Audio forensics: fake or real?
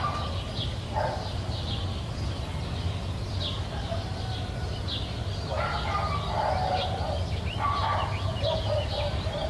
real